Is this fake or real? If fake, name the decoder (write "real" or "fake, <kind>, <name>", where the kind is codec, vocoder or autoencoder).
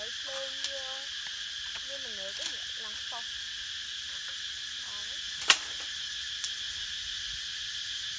real